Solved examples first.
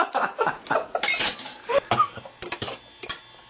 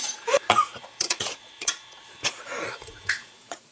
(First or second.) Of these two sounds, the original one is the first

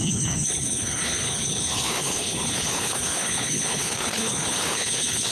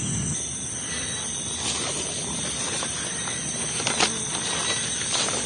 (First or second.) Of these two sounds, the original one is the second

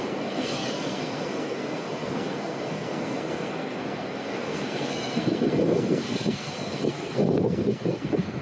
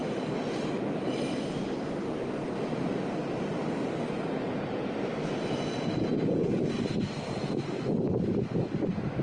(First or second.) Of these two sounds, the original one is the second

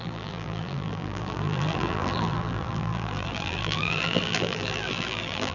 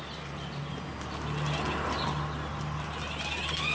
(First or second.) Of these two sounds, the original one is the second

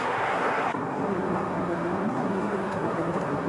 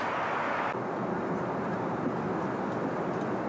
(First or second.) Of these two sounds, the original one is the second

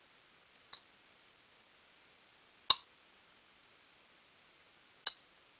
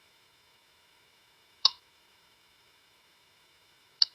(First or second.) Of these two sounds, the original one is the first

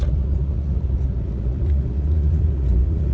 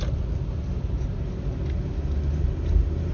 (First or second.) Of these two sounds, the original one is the second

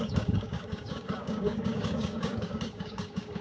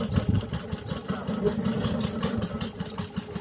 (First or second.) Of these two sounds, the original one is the second